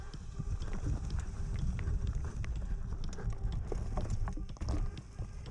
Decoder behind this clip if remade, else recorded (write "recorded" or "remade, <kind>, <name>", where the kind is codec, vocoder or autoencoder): recorded